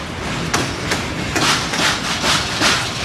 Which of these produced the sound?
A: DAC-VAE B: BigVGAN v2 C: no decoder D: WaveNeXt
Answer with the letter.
C